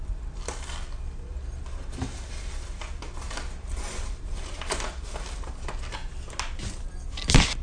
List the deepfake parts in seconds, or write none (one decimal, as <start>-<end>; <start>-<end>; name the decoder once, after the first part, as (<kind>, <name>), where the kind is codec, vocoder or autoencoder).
none